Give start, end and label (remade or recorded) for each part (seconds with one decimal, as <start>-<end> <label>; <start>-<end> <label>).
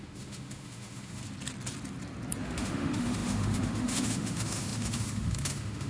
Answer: 0.0-1.2 remade; 1.2-2.4 recorded; 2.4-5.9 remade